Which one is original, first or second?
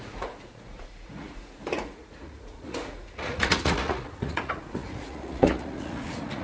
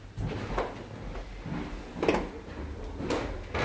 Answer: second